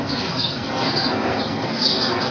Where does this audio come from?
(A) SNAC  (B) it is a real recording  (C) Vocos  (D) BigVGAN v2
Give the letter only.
A